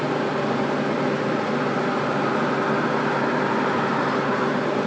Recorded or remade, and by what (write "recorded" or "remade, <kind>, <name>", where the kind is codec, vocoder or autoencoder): remade, vocoder, BigVGAN v2